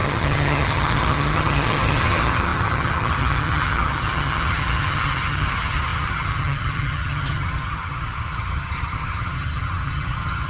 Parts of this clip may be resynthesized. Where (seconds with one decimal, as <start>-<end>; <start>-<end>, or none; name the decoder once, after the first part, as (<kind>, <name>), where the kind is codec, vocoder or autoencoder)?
0.0-10.5 (vocoder, HiFi-GAN)